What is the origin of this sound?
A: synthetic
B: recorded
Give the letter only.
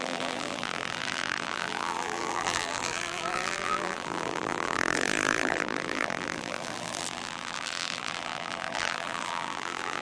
A